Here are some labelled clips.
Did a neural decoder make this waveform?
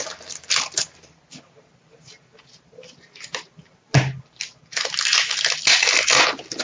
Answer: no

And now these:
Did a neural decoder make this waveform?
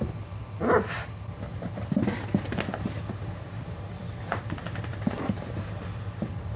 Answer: no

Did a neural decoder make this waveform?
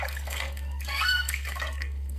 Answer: yes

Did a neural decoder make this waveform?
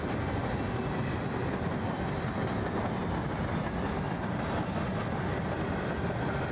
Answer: no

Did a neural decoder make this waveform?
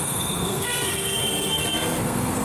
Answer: yes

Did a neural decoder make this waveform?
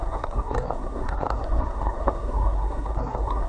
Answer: yes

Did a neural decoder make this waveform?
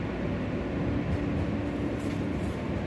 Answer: no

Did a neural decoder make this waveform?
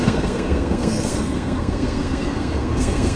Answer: yes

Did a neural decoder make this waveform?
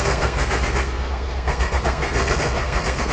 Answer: yes